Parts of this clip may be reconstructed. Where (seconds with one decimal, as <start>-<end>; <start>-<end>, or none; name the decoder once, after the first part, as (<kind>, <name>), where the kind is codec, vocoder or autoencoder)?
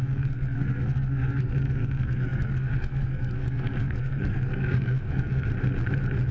0.0-5.5 (codec, SNAC)